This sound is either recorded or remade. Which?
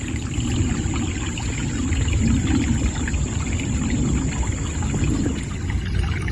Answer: recorded